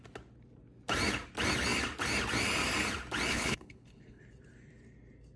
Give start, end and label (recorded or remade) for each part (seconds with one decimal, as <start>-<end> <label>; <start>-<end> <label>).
0.0-3.3 recorded; 3.3-4.2 remade; 4.2-5.4 recorded